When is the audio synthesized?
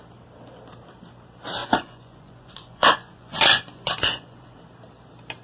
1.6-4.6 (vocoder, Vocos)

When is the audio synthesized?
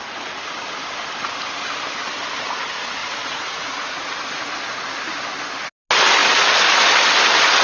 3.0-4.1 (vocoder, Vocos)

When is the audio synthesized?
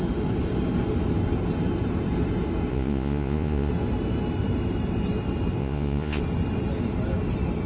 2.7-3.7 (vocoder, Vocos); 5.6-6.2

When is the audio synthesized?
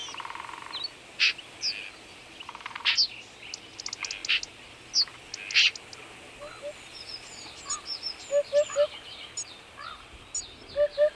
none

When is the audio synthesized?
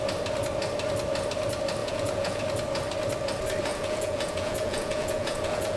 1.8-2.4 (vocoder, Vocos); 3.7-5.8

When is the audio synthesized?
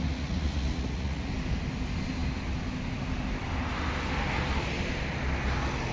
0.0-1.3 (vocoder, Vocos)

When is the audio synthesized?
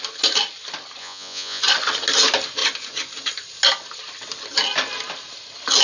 1.0-1.6 (vocoder, Vocos)